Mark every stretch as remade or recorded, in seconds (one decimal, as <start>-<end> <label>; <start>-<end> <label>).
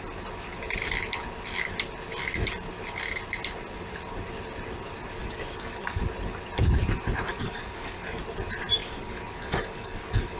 0.0-5.2 recorded; 5.2-6.0 remade; 6.0-7.3 recorded; 7.3-8.2 remade; 8.2-8.8 recorded; 8.8-10.4 remade